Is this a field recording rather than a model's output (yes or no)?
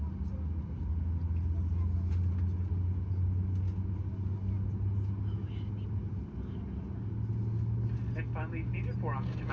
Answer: yes